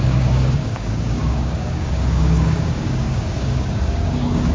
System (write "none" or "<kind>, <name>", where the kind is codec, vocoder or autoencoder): codec, DAC